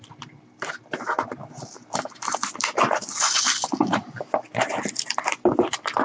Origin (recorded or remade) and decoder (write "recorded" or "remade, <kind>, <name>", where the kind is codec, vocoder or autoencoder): remade, vocoder, BigVGAN v2